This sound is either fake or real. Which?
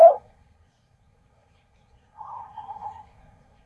fake